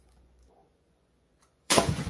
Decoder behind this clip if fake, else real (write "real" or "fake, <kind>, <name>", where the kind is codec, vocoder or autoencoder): fake, vocoder, Vocos